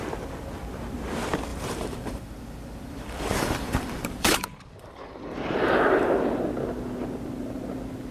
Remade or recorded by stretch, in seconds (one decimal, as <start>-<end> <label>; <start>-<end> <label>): 0.0-1.5 recorded; 1.5-6.2 remade; 6.2-8.1 recorded